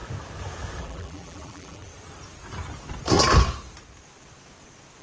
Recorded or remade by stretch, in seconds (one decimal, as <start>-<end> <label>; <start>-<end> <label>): 0.0-0.8 recorded; 0.8-1.9 remade; 1.9-5.0 recorded